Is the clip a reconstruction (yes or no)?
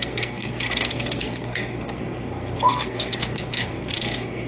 yes